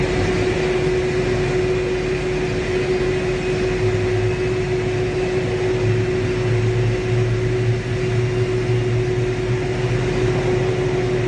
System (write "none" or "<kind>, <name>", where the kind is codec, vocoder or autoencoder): none